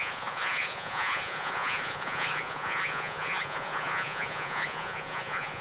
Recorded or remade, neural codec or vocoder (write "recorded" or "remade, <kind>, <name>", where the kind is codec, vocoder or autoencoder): remade, vocoder, Vocos